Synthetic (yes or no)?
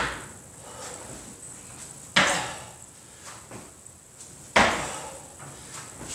no